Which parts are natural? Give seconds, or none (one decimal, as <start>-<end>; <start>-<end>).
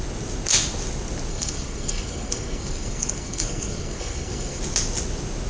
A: 0.0-1.3; 4.6-5.5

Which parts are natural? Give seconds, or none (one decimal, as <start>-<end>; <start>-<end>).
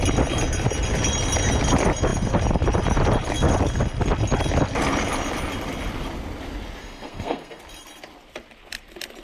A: 0.0-6.8; 7.6-9.2